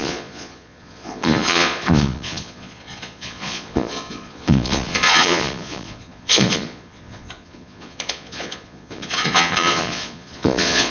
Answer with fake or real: fake